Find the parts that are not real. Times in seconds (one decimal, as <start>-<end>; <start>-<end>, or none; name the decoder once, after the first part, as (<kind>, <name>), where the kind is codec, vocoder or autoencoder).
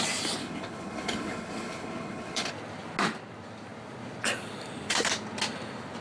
0.4-2.5 (codec, HILCodec)